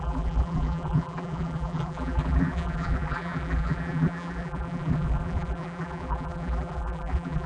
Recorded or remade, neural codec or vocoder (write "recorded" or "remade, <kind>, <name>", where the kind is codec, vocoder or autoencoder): remade, vocoder, BigVGAN v2